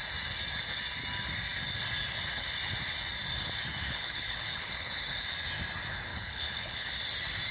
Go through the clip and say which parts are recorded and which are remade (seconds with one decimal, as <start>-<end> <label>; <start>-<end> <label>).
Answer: 0.0-3.8 recorded; 3.8-4.9 remade; 4.9-6.1 recorded; 6.1-6.9 remade; 6.9-7.5 recorded